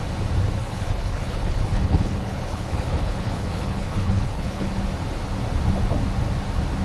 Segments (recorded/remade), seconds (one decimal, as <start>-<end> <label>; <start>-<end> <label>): 0.0-0.6 recorded; 0.6-4.7 remade; 4.7-6.8 recorded